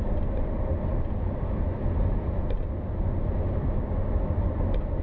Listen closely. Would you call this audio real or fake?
real